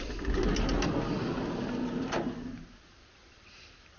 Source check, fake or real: real